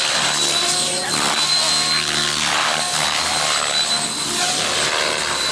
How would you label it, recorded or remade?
recorded